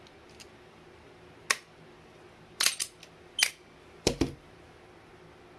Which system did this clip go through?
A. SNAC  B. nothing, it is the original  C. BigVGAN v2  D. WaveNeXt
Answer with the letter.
B